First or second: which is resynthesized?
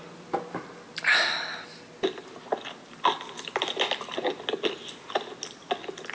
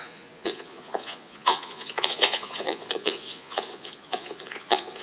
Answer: second